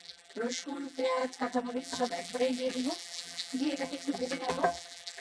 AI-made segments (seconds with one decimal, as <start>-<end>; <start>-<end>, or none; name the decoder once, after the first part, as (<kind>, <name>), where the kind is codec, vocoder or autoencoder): 0.0-5.2 (vocoder, BigVGAN v2)